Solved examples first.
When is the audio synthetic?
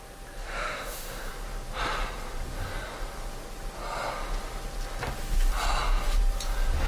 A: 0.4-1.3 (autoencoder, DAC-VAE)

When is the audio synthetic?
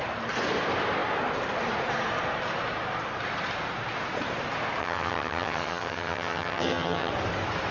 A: 4.8-7.1 (vocoder, HiFi-GAN)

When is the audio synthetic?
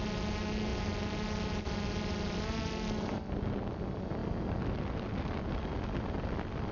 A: none